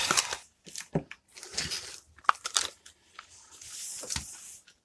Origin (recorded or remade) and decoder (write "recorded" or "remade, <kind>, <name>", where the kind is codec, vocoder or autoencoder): recorded